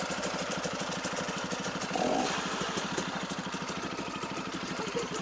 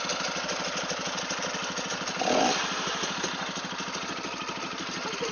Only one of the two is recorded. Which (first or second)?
second